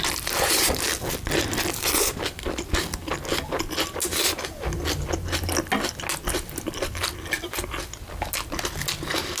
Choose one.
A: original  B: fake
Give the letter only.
A